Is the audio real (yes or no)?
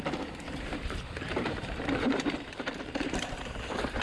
no